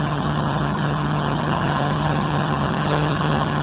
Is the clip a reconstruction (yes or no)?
yes